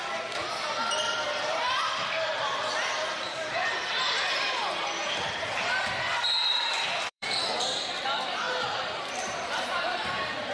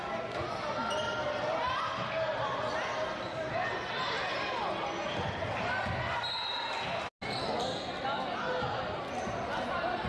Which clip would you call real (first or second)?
second